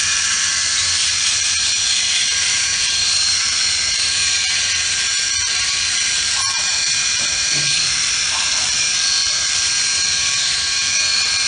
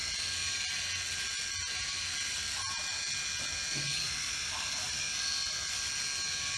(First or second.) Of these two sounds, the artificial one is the first